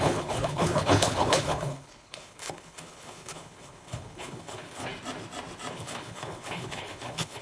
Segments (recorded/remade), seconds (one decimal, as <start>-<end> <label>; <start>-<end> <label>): 0.0-4.9 remade; 4.9-5.7 recorded; 5.7-7.4 remade